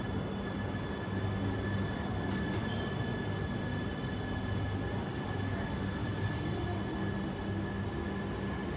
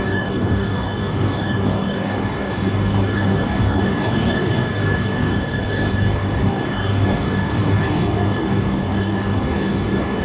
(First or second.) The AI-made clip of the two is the second